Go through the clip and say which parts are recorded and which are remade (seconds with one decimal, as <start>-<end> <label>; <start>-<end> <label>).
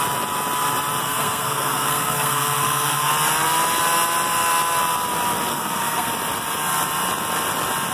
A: 0.0-1.0 recorded; 1.0-3.1 remade; 3.1-5.5 recorded; 5.5-6.1 remade; 6.1-7.9 recorded